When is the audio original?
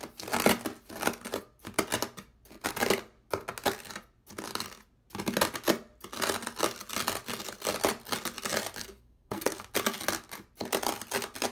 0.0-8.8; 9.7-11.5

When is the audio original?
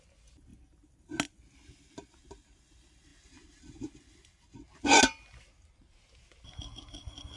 0.0-7.4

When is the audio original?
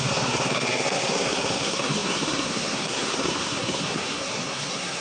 none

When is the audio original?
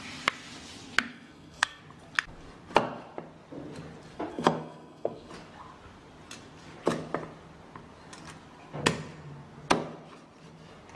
0.0-1.1; 1.8-4.3; 5.3-11.0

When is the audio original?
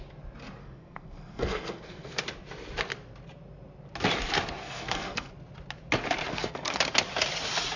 0.0-0.6; 2.2-4.6; 5.3-6.3; 6.8-7.8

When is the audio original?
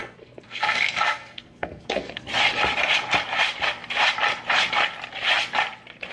2.3-6.1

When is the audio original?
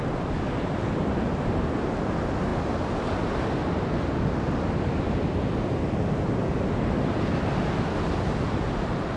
0.0-9.2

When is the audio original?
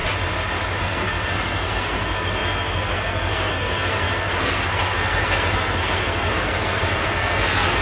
0.0-0.8